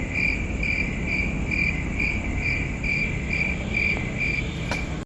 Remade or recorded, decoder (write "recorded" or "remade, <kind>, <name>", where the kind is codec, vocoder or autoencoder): recorded